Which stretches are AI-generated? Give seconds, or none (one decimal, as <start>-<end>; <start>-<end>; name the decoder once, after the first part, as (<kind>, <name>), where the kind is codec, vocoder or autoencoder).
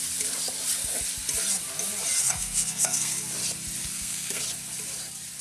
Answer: 2.2-3.2 (codec, SNAC); 3.8-4.4